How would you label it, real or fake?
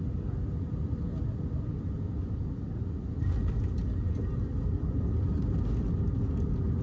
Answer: real